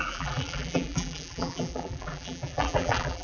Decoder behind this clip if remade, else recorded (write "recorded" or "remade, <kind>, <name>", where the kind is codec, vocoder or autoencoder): remade, vocoder, BigVGAN v2